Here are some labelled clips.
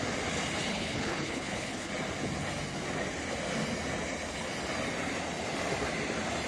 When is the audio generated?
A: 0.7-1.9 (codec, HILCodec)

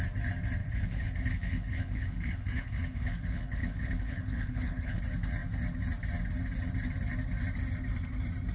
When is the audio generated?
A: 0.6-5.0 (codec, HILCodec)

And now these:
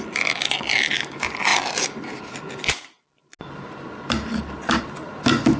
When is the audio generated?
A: none